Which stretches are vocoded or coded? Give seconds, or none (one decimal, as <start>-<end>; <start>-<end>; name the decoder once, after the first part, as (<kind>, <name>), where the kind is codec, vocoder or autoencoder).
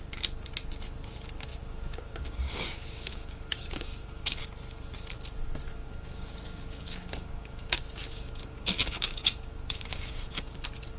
1.5-4.4 (codec, DAC); 5.8-10.6